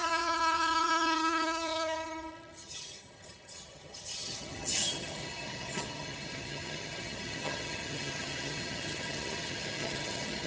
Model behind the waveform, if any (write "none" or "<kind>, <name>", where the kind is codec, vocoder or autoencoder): vocoder, HiFi-GAN